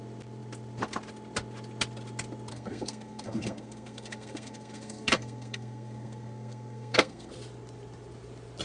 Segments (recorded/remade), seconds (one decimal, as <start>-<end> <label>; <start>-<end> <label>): 0.0-2.5 recorded; 2.5-7.3 remade; 7.3-8.6 recorded